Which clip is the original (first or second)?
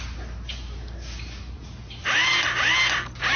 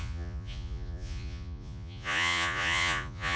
first